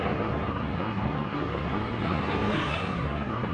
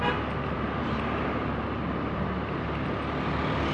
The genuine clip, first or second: second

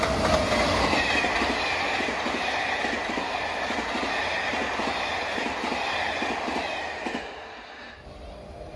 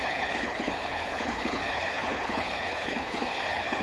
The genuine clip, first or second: first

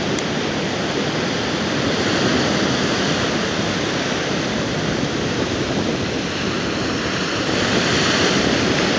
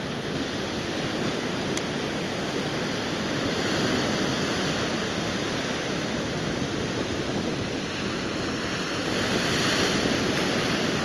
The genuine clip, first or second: second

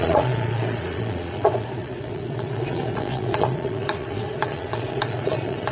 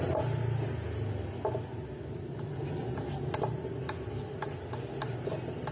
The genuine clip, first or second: second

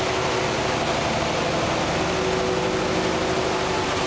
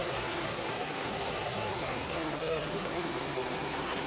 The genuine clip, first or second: first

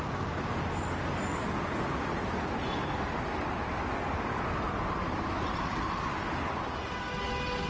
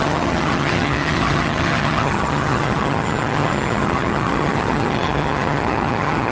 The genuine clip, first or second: first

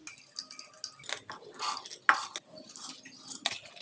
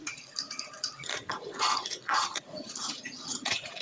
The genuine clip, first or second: first